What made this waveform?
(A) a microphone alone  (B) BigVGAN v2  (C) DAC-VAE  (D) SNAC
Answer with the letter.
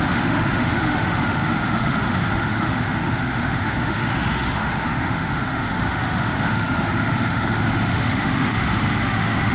C